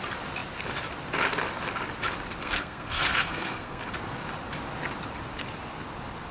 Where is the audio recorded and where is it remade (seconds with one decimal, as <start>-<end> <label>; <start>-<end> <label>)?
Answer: 0.0-2.4 recorded; 2.4-3.8 remade; 3.8-6.3 recorded